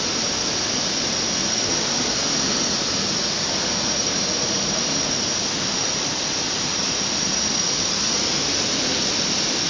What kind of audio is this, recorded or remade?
recorded